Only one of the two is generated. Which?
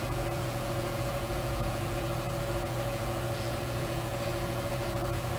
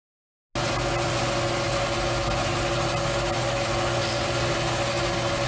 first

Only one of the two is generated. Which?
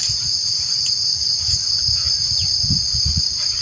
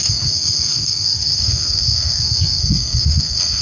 second